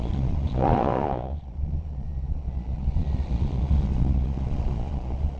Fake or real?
fake